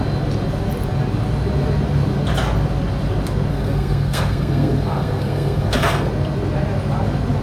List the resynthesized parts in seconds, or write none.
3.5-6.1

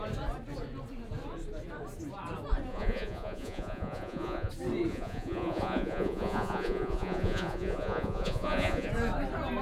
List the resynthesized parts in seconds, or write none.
2.7-4.5; 4.9-8.9

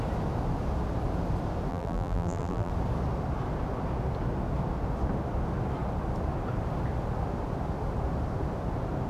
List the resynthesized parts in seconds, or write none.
1.7-2.7